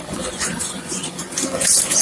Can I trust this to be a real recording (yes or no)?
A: no